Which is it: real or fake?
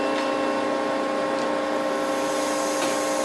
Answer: real